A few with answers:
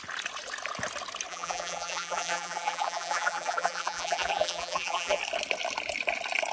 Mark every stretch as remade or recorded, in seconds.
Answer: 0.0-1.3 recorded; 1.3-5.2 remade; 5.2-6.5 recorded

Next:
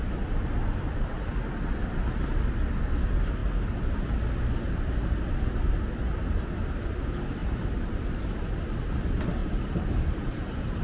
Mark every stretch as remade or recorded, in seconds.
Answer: 0.0-9.4 recorded; 9.4-10.3 remade; 10.3-10.8 recorded

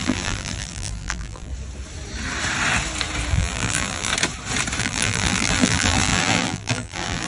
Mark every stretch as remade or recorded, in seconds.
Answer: 0.0-1.5 remade; 1.5-3.3 recorded; 3.3-4.1 remade; 4.1-4.8 recorded; 4.8-7.3 remade